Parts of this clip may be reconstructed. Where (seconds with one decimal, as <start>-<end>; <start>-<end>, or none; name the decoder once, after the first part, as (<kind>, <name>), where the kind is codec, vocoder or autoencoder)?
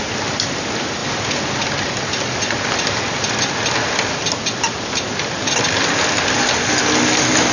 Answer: none